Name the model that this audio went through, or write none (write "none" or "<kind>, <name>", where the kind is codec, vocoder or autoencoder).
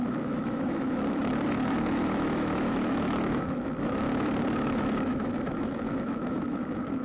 autoencoder, DAC-VAE